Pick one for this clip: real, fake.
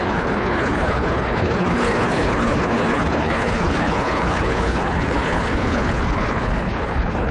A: fake